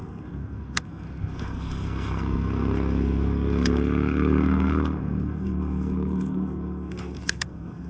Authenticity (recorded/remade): remade